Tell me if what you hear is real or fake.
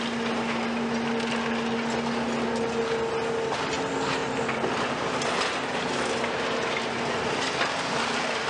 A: real